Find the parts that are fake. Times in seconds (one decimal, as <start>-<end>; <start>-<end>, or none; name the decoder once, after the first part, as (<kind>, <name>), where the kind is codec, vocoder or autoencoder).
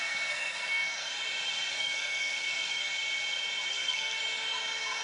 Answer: 0.0-1.1 (codec, SNAC); 1.7-2.9; 3.7-4.2